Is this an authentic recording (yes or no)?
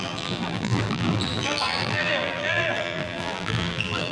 no